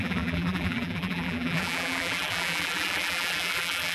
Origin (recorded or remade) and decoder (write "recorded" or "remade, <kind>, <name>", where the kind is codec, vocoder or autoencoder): remade, vocoder, BigVGAN v2